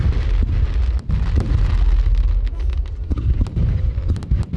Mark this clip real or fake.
real